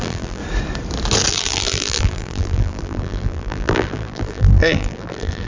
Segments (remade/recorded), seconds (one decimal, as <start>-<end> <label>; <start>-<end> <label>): 0.0-0.4 remade; 0.4-1.3 recorded; 1.3-5.5 remade